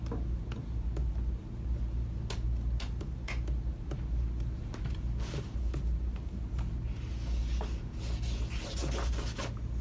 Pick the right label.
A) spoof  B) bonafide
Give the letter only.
B